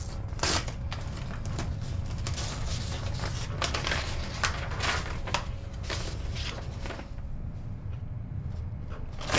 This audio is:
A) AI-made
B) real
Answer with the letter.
B